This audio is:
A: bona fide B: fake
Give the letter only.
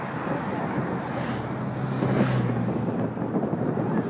A